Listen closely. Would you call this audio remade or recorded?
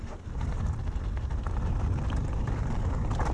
recorded